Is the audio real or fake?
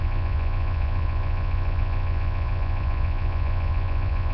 fake